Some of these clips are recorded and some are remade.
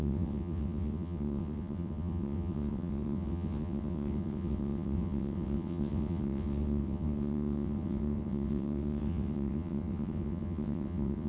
remade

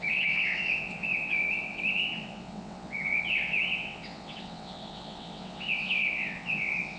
remade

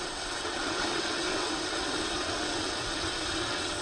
remade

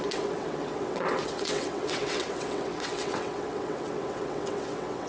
remade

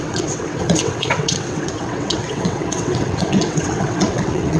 remade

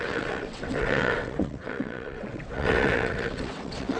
remade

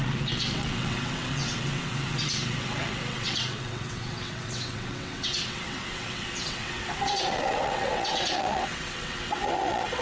remade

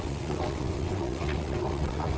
remade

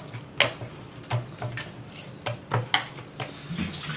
recorded